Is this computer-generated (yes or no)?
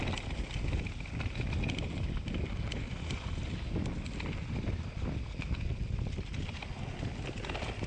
no